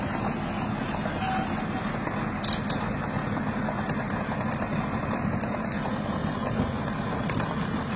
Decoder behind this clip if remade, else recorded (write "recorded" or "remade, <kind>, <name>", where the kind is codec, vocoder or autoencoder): recorded